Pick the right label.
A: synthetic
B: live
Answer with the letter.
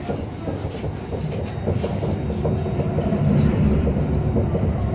B